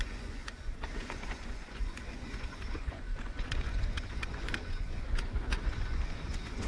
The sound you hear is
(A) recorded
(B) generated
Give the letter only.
B